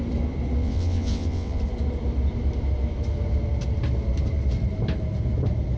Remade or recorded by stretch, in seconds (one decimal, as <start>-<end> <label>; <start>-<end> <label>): 0.0-0.6 recorded; 0.6-1.6 remade; 1.6-5.8 recorded